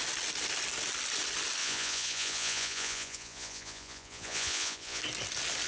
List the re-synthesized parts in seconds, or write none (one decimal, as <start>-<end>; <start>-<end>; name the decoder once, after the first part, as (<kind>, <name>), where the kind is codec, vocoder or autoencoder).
1.6-5.0 (vocoder, Vocos)